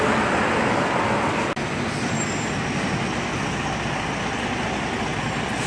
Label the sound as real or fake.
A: real